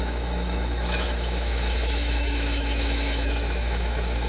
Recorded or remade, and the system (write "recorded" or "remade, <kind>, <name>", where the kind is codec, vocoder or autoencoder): remade, autoencoder, DAC-VAE